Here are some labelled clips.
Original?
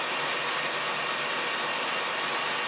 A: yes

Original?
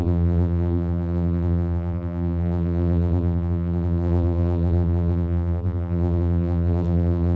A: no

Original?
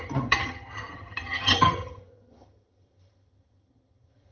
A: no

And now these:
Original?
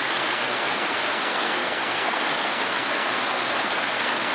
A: no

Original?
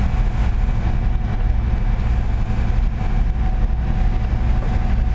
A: yes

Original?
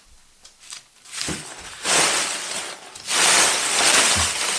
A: yes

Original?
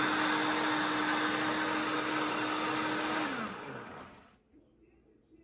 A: yes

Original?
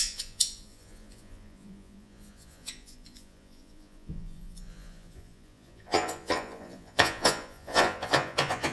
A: no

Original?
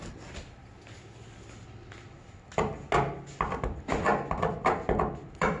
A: yes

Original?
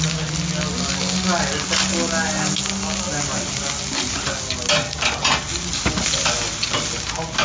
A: yes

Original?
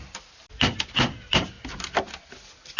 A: yes